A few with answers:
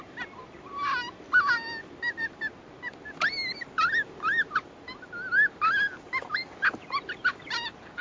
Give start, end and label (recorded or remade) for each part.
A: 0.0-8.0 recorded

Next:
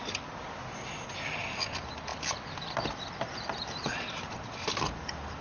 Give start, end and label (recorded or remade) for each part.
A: 0.0-5.4 recorded

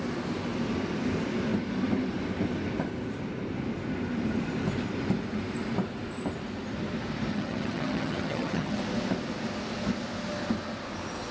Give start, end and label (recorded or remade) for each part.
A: 0.0-7.3 recorded; 7.3-8.8 remade; 8.8-11.3 recorded

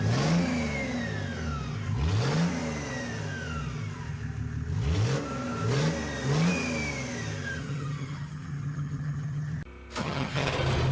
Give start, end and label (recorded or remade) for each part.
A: 0.0-7.6 recorded; 7.6-9.5 remade; 9.5-10.0 recorded; 10.0-10.5 remade; 10.5-10.9 recorded

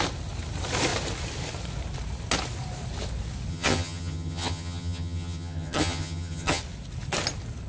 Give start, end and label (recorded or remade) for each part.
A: 0.0-3.5 recorded; 3.5-6.6 remade; 6.6-7.7 recorded

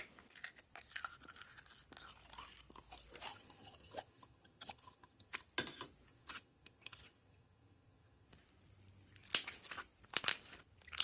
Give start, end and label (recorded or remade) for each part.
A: 0.0-3.3 recorded; 3.3-5.3 remade; 5.3-6.1 recorded; 6.1-8.3 remade; 8.3-11.0 recorded